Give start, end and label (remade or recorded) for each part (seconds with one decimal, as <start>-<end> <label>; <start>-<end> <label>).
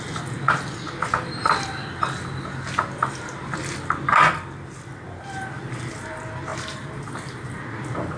0.0-6.5 recorded; 6.5-7.0 remade; 7.0-8.2 recorded